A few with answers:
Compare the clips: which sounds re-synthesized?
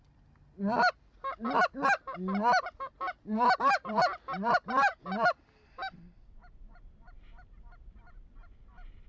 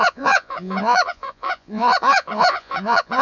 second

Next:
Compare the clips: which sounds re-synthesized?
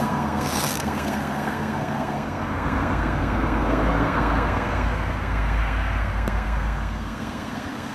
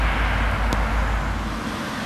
first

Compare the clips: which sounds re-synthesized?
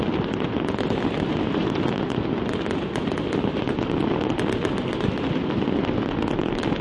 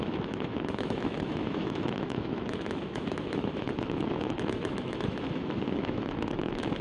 second